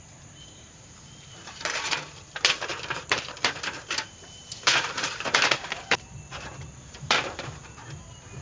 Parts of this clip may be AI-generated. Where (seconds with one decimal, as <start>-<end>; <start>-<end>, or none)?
0.0-8.4